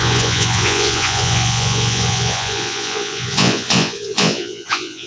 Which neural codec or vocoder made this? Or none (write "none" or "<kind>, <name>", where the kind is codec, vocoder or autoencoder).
vocoder, Vocos